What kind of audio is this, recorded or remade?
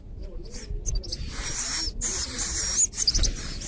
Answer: recorded